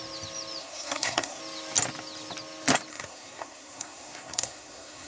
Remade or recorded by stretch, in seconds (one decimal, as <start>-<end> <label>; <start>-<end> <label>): 0.0-0.6 recorded; 0.6-1.4 remade; 1.4-2.9 recorded; 2.9-5.1 remade

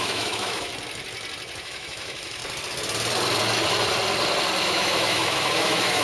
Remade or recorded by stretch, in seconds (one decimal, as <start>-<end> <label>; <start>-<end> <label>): 0.0-0.7 remade; 0.7-1.6 recorded; 1.6-2.4 remade; 2.4-4.6 recorded; 4.6-6.0 remade